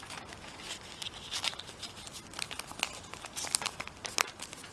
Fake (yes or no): no